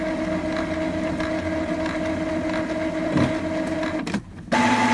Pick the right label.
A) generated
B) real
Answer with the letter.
B